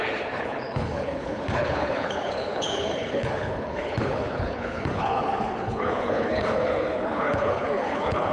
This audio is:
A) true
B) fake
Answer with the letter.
B